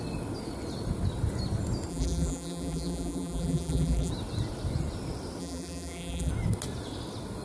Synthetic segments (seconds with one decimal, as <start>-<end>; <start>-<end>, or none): 1.9-4.1; 5.4-6.3